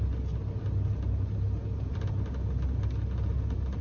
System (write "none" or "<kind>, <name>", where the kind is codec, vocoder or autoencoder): none